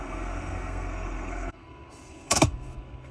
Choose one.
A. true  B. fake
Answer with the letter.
B